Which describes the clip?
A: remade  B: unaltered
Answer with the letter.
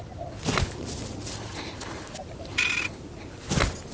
B